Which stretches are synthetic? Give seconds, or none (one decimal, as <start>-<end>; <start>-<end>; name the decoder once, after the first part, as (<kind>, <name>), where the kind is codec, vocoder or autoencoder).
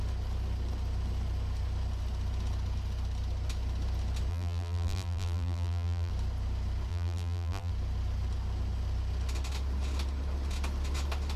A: 4.3-6.1 (vocoder, BigVGAN v2); 6.9-7.7